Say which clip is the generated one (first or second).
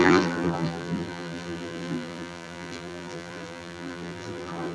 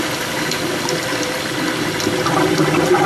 first